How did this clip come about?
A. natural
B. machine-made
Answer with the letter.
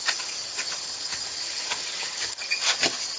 B